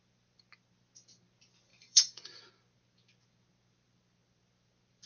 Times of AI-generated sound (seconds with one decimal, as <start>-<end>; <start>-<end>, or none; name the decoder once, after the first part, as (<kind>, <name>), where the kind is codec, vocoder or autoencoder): 1.7-2.4 (vocoder, Vocos)